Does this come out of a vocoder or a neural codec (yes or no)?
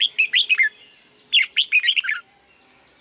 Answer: no